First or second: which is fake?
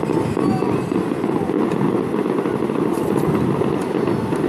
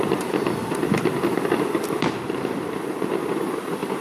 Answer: second